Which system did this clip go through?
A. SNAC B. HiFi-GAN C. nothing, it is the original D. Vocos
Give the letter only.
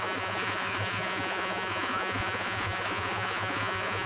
D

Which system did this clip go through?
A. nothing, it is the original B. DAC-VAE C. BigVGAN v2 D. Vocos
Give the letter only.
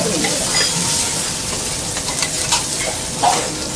A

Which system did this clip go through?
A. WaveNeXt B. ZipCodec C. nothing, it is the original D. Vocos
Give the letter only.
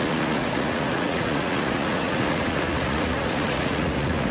D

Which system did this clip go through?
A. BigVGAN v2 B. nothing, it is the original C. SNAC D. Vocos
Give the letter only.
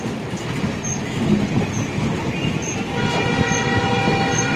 B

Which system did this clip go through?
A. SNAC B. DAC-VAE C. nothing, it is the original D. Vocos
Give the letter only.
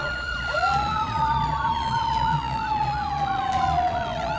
D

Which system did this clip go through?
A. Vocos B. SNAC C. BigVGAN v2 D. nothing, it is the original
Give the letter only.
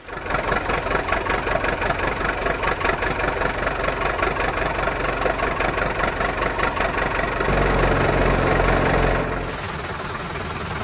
D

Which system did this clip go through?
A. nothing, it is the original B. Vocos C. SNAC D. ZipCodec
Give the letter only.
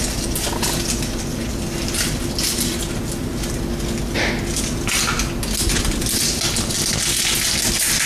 A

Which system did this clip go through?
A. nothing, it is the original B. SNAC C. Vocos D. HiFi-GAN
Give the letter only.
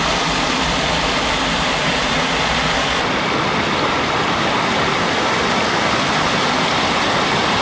A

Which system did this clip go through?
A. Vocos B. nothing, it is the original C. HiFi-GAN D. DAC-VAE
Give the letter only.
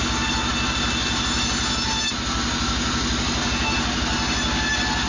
B